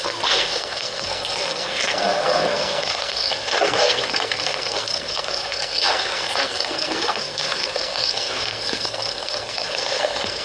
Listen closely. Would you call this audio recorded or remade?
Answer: remade